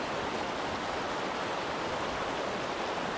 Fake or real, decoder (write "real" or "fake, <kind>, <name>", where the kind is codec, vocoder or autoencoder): real